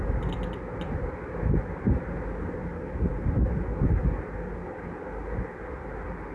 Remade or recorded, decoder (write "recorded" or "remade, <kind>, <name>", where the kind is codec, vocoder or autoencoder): recorded